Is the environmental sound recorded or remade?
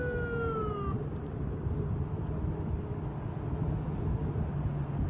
recorded